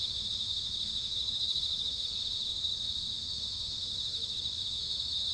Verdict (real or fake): fake